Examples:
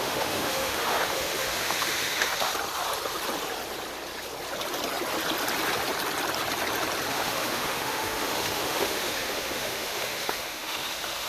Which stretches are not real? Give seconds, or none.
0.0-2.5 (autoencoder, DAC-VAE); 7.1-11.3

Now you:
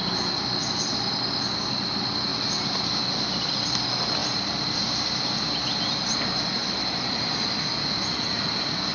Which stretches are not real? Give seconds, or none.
4.2-5.2 (vocoder, BigVGAN v2)

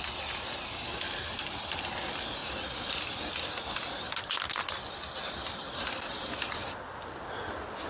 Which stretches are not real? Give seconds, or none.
none

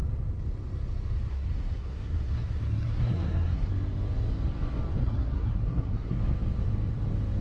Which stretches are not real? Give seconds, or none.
1.3-3.7 (codec, SNAC); 5.0-6.2

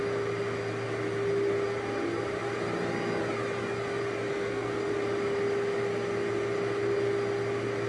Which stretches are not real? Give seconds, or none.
4.3-4.9 (codec, SNAC)

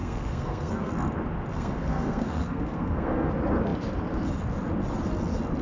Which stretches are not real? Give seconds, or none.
0.0-0.9 (codec, SNAC); 1.5-3.3